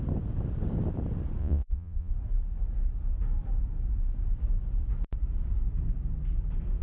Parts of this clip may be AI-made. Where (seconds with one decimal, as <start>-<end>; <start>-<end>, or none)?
1.4-2.1